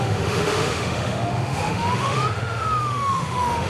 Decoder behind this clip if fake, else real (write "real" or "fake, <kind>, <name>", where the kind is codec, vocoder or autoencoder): fake, autoencoder, DAC-VAE